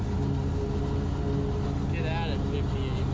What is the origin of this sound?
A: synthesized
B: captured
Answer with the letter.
B